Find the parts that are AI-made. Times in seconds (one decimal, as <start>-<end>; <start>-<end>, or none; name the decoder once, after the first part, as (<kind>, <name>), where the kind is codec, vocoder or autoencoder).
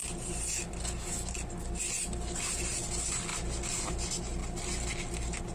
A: none